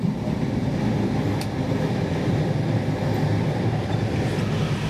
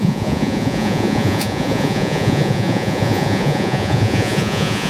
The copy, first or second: second